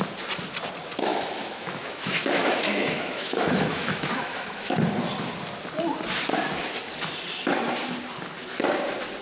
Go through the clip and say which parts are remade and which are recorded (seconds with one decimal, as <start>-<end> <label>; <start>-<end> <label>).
0.0-1.1 recorded; 1.1-4.8 remade; 4.8-9.2 recorded